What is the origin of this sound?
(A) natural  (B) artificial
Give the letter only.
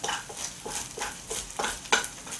A